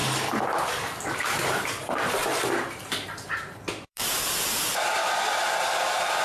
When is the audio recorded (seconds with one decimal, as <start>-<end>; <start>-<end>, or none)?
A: 0.0-1.1; 2.2-2.9; 5.0-6.2